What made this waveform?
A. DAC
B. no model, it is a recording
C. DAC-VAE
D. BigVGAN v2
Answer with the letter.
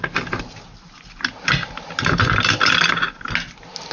B